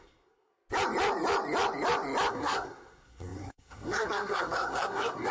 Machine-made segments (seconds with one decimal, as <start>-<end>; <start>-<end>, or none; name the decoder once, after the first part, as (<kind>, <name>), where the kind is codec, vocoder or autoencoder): 0.0-0.5 (codec, SNAC); 2.3-5.3